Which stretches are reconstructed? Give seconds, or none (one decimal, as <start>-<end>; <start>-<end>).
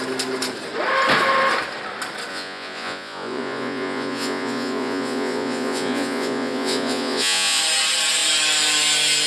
2.3-7.6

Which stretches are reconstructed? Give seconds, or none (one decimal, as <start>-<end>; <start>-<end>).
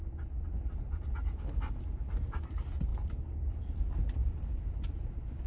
none